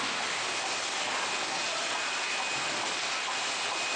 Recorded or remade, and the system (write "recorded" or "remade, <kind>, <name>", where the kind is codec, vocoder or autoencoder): recorded